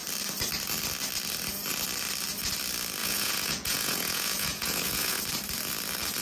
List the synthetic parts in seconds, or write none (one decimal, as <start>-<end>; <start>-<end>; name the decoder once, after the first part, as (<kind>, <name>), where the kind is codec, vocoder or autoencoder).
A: 3.0-5.2 (vocoder, Vocos)